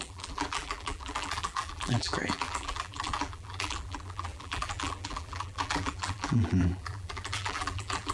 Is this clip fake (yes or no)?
yes